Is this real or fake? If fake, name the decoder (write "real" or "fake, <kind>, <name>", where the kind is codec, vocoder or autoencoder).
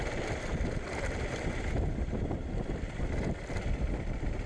real